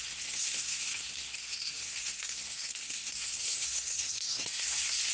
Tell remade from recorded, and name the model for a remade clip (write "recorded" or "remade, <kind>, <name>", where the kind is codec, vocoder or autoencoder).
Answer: remade, codec, SNAC